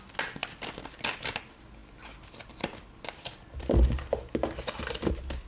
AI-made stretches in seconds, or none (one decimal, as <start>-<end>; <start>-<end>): none